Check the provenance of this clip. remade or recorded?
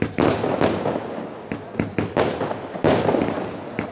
recorded